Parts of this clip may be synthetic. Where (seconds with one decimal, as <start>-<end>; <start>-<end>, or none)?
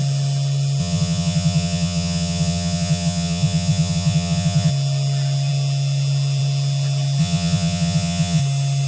0.8-4.7; 7.2-8.4